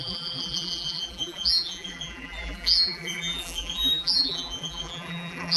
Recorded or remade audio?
remade